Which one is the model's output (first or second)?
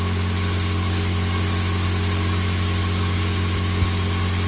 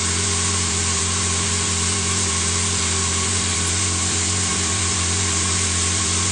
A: second